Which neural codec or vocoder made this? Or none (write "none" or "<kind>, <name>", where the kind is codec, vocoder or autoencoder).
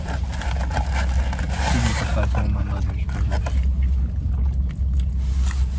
none